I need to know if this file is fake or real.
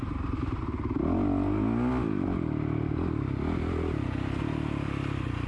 real